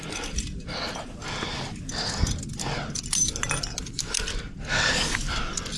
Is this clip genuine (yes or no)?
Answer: yes